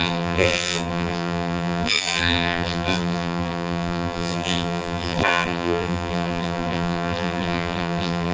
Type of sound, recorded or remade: remade